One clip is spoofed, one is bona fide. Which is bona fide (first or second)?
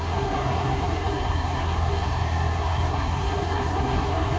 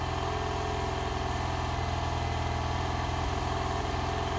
second